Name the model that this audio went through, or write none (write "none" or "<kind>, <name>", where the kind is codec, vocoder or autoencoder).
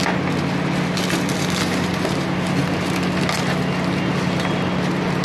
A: none